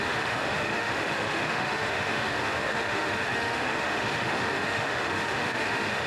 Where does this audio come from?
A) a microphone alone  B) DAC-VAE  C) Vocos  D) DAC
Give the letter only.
B